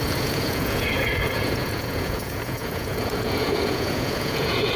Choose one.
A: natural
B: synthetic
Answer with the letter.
B